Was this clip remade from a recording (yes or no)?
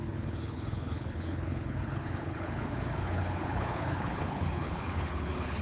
yes